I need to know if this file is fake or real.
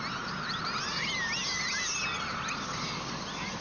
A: real